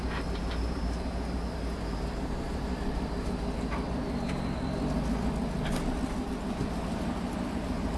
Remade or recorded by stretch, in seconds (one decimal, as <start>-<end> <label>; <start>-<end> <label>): 0.0-2.7 remade; 2.7-6.3 recorded; 6.3-8.0 remade